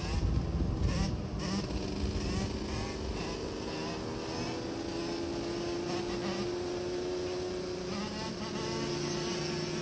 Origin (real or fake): real